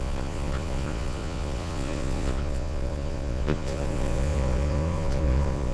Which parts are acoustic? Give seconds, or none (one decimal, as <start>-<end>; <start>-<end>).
none

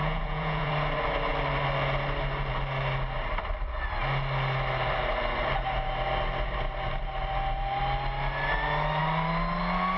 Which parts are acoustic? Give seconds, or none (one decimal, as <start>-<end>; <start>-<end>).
0.7-10.0